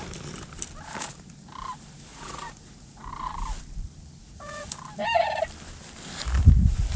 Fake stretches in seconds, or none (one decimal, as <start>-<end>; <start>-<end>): 2.1-3.1; 4.2-4.7